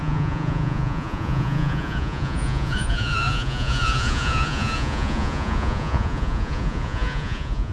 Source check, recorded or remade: remade